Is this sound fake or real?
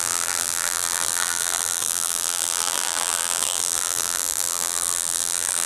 fake